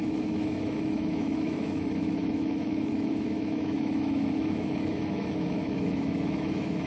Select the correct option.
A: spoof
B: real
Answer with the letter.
A